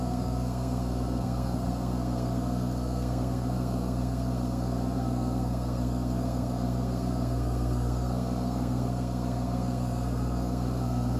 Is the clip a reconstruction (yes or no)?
yes